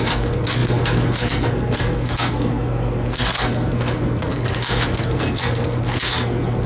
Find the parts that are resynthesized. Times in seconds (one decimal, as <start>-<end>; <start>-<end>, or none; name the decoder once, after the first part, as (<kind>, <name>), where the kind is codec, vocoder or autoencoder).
0.0-6.7 (codec, SNAC)